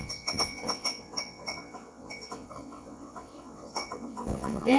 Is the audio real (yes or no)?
no